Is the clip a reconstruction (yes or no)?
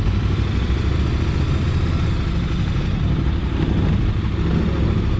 no